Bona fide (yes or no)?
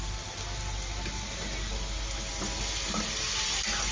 yes